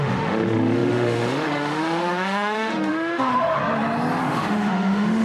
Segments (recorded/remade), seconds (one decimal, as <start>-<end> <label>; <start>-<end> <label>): 0.0-3.6 remade; 3.6-4.2 recorded; 4.2-5.2 remade